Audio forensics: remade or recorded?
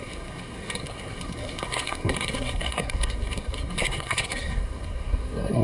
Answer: remade